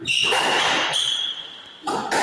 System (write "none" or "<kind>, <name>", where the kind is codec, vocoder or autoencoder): vocoder, BigVGAN v2